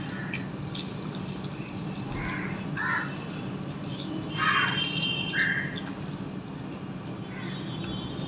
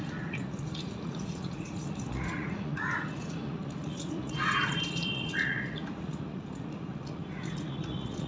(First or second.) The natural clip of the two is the first